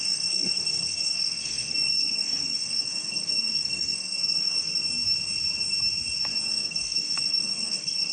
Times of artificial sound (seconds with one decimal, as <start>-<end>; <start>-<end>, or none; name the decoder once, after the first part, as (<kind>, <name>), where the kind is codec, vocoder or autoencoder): 0.0-4.8 (codec, SNAC); 6.5-8.1